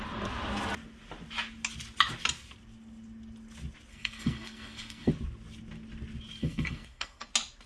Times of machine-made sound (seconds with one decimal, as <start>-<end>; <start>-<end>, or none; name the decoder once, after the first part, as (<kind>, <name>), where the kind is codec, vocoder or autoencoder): 3.9-5.1 (codec, SNAC); 6.4-7.3